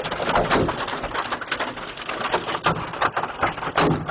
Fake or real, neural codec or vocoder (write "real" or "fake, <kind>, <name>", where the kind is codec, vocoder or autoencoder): real